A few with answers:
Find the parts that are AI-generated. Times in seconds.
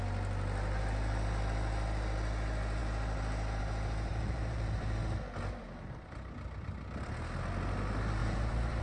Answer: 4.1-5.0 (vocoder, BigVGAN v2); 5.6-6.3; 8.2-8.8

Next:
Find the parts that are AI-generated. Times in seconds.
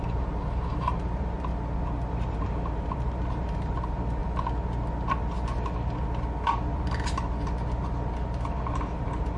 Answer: 0.0-1.5 (vocoder, BigVGAN v2); 2.1-4.2; 8.7-9.4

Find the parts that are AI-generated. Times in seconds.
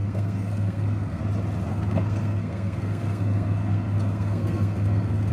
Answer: 0.0-1.2 (codec, SNAC); 1.7-5.3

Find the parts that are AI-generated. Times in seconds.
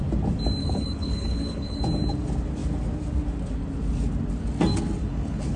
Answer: 0.6-1.8 (codec, HILCodec); 5.0-5.6